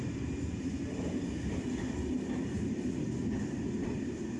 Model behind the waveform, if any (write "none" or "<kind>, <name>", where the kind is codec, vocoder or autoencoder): none